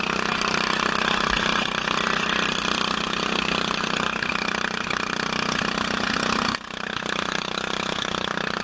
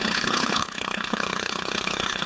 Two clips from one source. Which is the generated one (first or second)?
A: second